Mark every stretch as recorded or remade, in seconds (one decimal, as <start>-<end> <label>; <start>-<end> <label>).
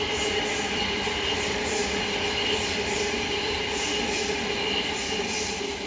0.0-5.9 recorded